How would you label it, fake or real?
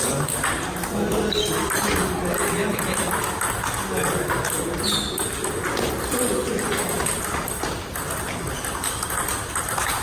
real